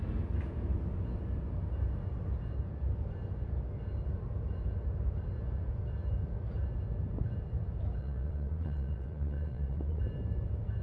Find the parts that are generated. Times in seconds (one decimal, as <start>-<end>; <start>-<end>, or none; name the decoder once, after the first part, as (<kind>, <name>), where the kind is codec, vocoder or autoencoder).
8.0-10.0 (vocoder, Vocos)

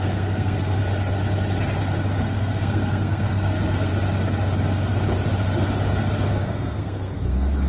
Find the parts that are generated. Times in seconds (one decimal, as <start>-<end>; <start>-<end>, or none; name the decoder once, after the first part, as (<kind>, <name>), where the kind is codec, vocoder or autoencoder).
0.0-0.8 (codec, SNAC); 2.2-3.9; 6.3-7.7

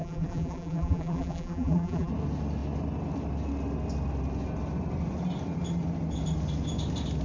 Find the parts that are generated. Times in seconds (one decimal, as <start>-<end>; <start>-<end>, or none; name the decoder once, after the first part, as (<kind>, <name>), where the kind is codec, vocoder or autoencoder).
0.0-2.1 (vocoder, BigVGAN v2)